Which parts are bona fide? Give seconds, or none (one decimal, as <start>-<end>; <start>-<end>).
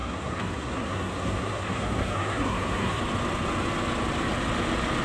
3.0-5.0